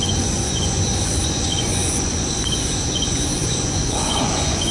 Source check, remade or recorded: remade